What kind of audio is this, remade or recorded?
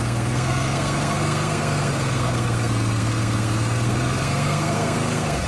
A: remade